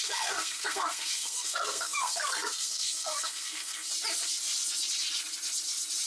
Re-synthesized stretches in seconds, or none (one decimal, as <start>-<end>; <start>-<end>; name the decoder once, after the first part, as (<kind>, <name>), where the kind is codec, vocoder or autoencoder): 0.0-3.9 (codec, SNAC)

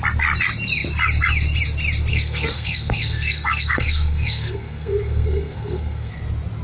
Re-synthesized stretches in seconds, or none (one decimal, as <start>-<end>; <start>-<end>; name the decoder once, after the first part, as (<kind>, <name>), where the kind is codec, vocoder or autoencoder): 2.1-6.1 (codec, SNAC)

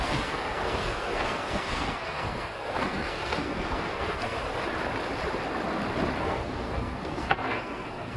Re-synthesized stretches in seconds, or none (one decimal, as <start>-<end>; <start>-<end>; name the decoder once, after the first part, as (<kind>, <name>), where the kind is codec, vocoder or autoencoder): 0.0-4.4 (codec, SNAC); 6.2-8.2